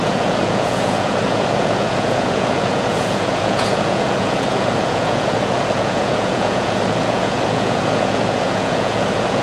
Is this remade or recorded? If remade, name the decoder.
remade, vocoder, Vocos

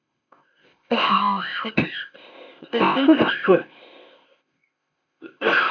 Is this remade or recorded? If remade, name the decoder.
remade, codec, ZipCodec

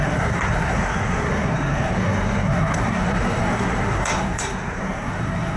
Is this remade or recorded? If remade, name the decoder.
remade, codec, SNAC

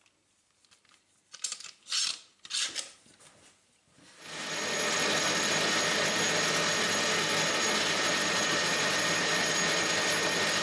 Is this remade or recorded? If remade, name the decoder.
recorded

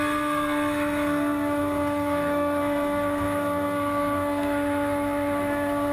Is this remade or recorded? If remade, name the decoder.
remade, codec, SNAC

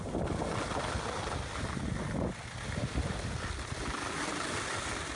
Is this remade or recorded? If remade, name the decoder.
recorded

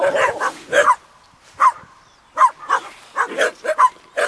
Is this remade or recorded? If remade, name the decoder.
recorded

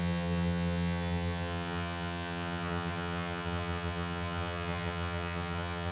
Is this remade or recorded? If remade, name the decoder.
remade, vocoder, HiFi-GAN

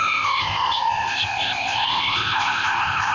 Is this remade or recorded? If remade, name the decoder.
remade, codec, ZipCodec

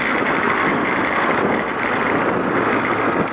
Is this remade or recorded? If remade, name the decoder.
recorded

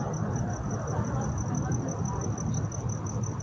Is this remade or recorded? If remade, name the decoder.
recorded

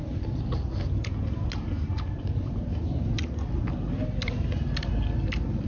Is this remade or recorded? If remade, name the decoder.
recorded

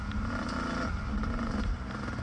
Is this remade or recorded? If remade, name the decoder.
recorded